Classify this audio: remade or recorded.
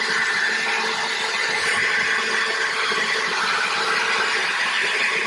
recorded